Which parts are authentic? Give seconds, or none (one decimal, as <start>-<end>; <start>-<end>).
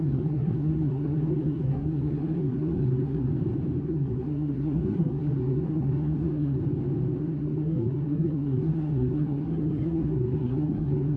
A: 3.3-3.8; 6.6-7.2